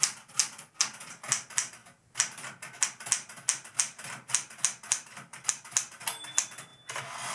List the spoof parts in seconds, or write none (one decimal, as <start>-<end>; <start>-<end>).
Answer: none